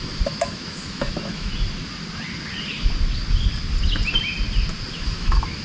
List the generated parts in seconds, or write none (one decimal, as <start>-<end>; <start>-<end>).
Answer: 0.0-1.5; 4.9-5.6